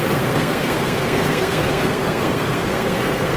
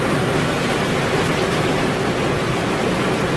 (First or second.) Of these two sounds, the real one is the second